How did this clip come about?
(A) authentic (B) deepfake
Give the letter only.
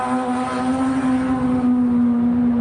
A